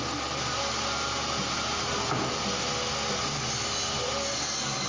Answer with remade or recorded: recorded